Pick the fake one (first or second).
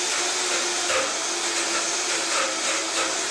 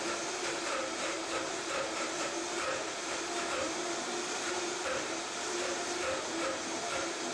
second